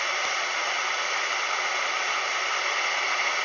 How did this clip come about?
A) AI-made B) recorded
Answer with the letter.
B